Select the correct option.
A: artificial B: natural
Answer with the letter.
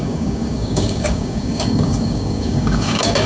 A